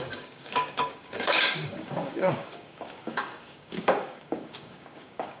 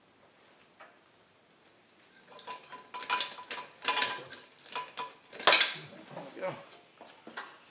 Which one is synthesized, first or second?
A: first